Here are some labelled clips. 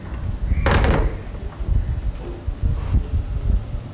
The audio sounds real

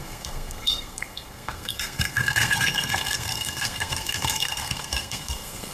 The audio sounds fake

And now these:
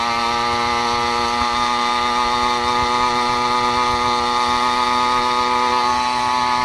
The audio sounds real